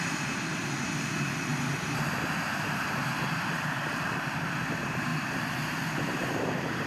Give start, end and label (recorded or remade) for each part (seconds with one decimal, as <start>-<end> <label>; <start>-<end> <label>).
0.0-6.9 recorded